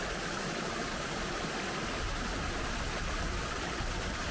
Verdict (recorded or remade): recorded